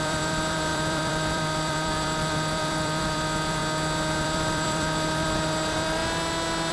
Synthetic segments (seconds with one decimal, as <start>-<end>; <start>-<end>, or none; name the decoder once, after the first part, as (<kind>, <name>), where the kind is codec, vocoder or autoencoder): 0.0-3.6 (vocoder, BigVGAN v2); 4.2-6.0